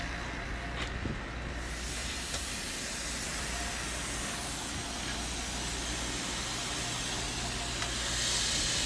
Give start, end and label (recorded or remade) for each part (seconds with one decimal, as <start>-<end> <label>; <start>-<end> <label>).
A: 0.0-2.0 recorded; 2.0-2.5 remade; 2.5-8.9 recorded